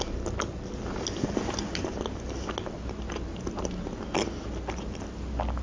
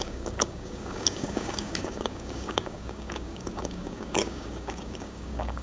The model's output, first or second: second